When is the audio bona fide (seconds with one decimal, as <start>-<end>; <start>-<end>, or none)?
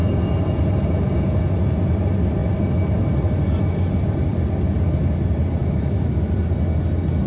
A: 0.0-5.6; 6.3-7.3